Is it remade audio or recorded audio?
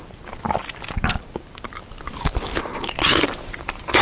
recorded